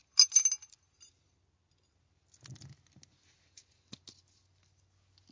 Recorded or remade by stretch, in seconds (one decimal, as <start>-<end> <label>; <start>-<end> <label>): 0.0-5.3 recorded